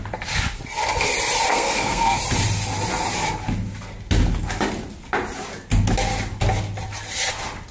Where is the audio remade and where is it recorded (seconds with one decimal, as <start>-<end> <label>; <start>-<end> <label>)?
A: 0.0-1.5 recorded; 1.5-2.2 remade; 2.2-7.7 recorded

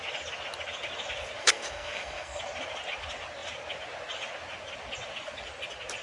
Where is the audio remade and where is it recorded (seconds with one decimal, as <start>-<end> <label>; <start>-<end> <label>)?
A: 0.0-1.4 recorded; 1.4-2.4 remade; 2.4-6.0 recorded

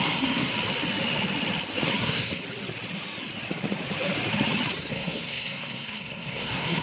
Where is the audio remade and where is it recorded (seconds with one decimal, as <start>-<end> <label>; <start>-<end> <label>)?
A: 0.0-0.5 remade; 0.5-2.0 recorded; 2.0-2.4 remade; 2.4-4.8 recorded; 4.8-6.8 remade

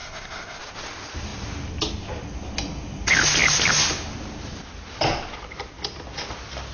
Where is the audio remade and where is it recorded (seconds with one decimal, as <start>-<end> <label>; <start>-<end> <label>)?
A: 0.0-0.6 remade; 0.6-6.7 recorded